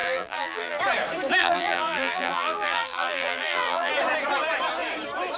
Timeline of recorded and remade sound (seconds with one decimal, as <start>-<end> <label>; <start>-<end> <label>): 0.0-0.8 remade; 0.8-1.4 recorded; 1.4-3.9 remade; 3.9-5.4 recorded